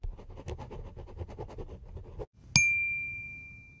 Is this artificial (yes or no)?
no